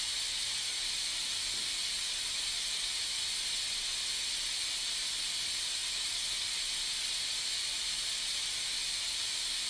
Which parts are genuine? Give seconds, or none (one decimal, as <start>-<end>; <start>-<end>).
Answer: 0.0-9.7